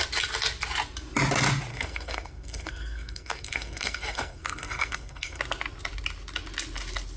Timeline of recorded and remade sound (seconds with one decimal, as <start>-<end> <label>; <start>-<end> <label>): 0.0-1.7 recorded; 1.7-5.4 remade; 5.4-7.2 recorded